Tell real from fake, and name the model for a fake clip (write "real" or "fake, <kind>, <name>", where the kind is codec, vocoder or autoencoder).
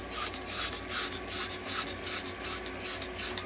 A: real